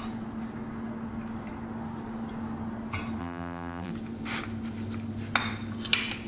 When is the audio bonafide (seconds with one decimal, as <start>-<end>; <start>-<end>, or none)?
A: 0.0-3.2; 3.9-6.3